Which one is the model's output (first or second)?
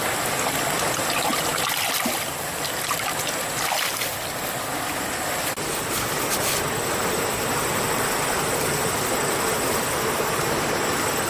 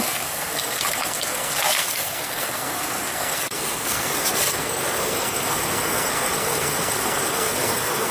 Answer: second